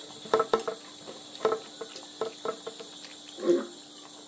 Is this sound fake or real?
real